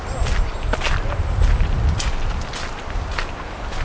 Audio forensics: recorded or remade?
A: recorded